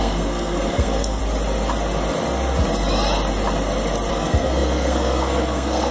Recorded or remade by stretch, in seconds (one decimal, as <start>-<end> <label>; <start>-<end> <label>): 0.0-1.2 remade; 1.2-4.1 recorded; 4.1-5.9 remade

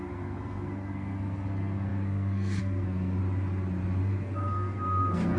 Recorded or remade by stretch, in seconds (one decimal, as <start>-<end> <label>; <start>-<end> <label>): 0.0-3.2 remade; 3.2-4.0 recorded; 4.0-5.4 remade